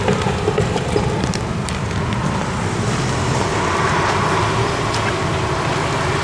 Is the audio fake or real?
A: fake